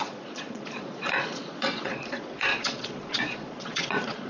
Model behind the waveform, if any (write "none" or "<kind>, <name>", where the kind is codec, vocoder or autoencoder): vocoder, Vocos